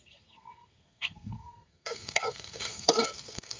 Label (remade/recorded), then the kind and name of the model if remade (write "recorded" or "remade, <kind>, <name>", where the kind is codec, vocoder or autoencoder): remade, codec, SNAC